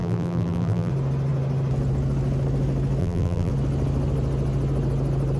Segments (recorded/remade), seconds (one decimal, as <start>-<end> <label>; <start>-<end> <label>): 0.0-0.9 remade; 0.9-3.0 recorded; 3.0-3.5 remade; 3.5-5.4 recorded